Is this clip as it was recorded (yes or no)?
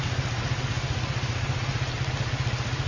yes